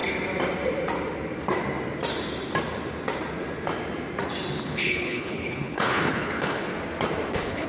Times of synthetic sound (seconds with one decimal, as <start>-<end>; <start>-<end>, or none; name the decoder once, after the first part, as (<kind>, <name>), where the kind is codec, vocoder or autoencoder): 4.6-6.7 (codec, HILCodec); 7.3-7.7